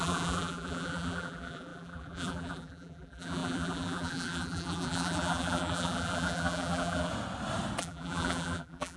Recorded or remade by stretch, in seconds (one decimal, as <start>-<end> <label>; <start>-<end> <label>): 0.0-7.1 remade; 7.1-7.8 recorded; 7.8-9.0 remade